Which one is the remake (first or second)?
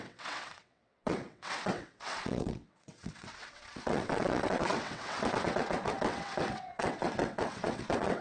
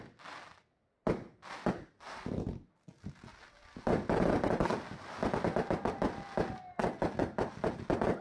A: first